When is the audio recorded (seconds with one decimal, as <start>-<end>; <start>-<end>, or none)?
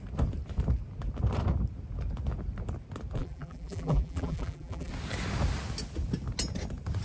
0.0-3.2; 4.9-7.0